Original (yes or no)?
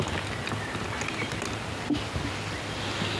yes